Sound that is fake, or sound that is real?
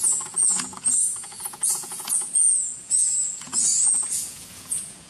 fake